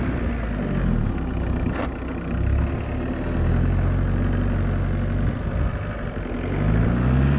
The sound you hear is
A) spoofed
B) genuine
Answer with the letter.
B